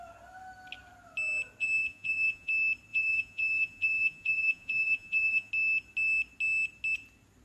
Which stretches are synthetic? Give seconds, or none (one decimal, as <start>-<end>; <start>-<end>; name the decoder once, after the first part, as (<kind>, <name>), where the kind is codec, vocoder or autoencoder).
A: 1.6-2.5 (vocoder, Vocos); 2.9-5.5